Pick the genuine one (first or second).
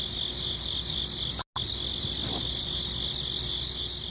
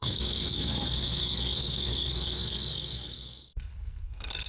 first